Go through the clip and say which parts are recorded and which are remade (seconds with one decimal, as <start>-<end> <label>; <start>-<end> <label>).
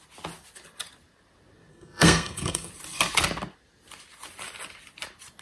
0.0-1.7 recorded; 1.7-2.7 remade; 2.7-5.4 recorded